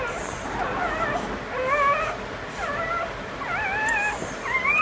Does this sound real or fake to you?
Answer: real